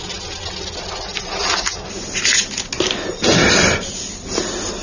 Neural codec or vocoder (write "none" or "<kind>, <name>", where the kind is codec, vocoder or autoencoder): none